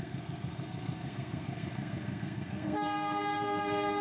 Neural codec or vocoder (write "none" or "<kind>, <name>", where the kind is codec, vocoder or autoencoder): codec, SNAC